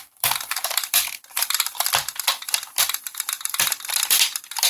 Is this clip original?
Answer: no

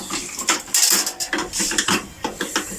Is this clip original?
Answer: yes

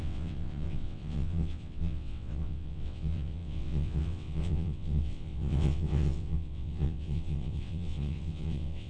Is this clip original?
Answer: no